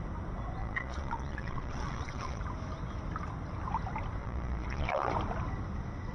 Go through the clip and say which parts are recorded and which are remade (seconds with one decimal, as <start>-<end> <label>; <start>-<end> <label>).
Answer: 0.0-0.6 recorded; 0.6-2.4 remade; 2.4-4.2 recorded; 4.2-5.1 remade; 5.1-6.1 recorded